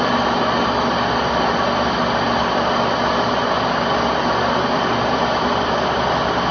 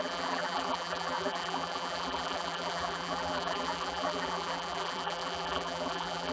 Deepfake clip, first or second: second